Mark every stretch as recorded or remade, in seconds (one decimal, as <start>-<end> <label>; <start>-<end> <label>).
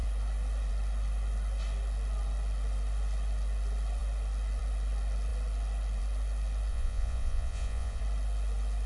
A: 0.0-6.7 recorded; 6.7-8.0 remade; 8.0-8.9 recorded